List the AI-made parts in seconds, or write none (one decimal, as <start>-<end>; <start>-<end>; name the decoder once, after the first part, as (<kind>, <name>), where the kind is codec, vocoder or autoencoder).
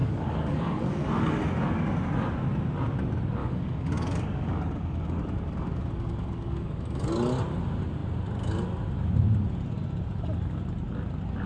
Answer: 0.0-1.3 (codec, DAC); 3.4-7.1